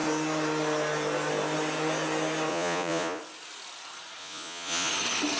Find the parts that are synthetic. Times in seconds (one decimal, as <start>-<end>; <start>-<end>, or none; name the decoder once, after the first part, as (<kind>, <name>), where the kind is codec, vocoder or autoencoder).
2.5-3.2 (vocoder, Vocos); 4.2-4.9